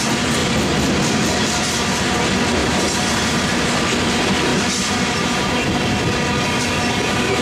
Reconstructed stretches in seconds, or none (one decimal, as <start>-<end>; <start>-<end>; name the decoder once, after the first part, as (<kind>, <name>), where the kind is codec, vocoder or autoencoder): 2.6-3.5 (vocoder, BigVGAN v2); 4.5-5.5